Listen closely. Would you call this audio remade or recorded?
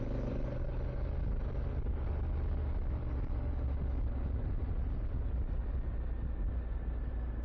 recorded